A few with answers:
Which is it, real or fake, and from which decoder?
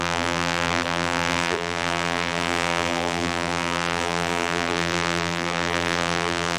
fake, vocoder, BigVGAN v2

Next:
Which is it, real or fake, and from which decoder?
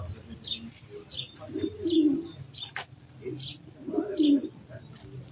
fake, vocoder, BigVGAN v2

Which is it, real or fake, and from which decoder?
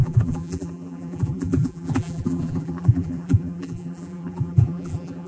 fake, vocoder, BigVGAN v2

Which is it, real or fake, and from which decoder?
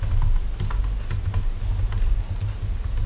real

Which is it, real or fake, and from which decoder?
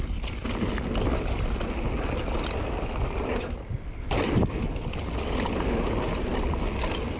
real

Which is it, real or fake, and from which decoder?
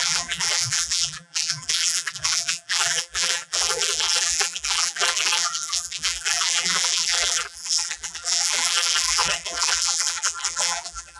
fake, vocoder, BigVGAN v2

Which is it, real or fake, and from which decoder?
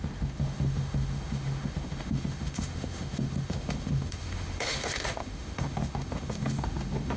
fake, autoencoder, DAC-VAE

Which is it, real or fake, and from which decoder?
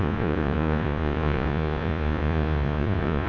fake, vocoder, Vocos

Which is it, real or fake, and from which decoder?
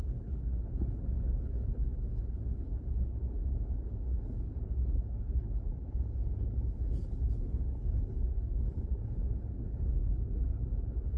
fake, codec, HILCodec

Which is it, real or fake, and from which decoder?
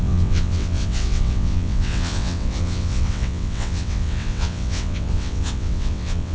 fake, vocoder, WaveNeXt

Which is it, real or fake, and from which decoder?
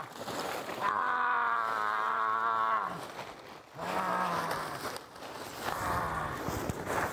real